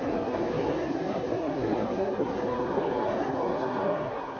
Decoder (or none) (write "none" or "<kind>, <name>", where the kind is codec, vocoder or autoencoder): codec, SNAC